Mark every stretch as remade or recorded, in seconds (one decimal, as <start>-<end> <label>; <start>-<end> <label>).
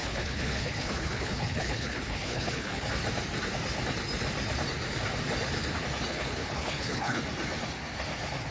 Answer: 0.0-2.9 remade; 2.9-6.1 recorded; 6.1-7.2 remade; 7.2-8.5 recorded